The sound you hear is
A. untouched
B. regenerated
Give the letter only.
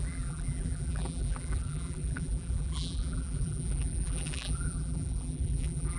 B